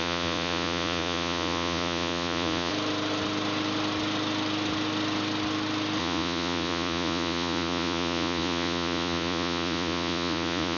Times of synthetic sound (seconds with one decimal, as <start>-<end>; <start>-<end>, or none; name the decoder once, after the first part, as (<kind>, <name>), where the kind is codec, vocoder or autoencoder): 0.0-2.7 (vocoder, Vocos); 6.0-10.8